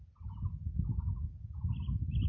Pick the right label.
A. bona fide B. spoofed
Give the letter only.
A